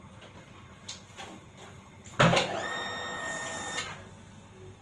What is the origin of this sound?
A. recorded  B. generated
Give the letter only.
A